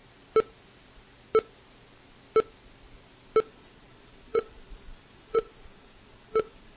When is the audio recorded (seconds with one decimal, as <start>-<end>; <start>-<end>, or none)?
0.0-3.4